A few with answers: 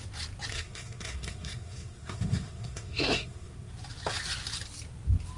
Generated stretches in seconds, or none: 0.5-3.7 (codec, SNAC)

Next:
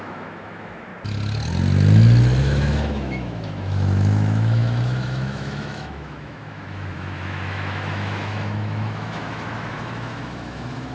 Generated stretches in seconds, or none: 0.0-0.9 (autoencoder, DAC-VAE); 2.4-10.9

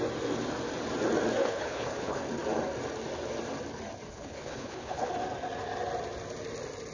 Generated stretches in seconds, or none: 1.4-2.2 (codec, HILCodec); 4.1-5.1

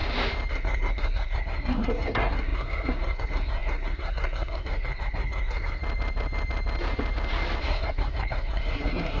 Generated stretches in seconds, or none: 0.5-5.8 (codec, SNAC); 7.6-9.2

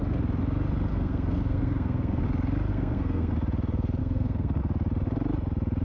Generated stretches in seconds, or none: 0.9-2.2 (codec, SNAC); 2.7-3.3; 4.0-4.6